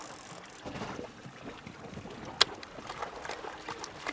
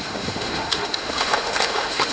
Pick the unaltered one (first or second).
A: first